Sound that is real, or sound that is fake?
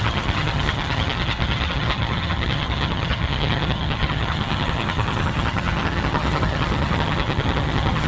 fake